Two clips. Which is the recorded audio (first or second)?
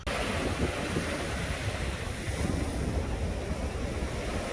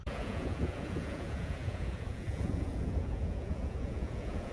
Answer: first